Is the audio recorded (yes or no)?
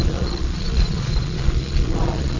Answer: no